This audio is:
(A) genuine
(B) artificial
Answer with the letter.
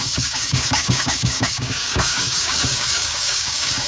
B